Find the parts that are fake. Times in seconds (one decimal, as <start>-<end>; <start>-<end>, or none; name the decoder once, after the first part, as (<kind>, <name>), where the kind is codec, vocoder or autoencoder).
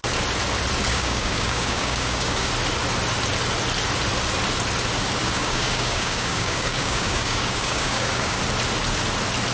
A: 0.9-2.5 (codec, DAC); 5.2-8.4